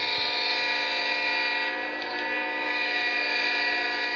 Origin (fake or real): real